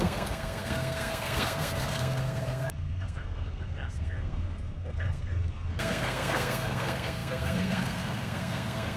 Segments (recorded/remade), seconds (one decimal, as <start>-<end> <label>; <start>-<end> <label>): 0.0-9.0 remade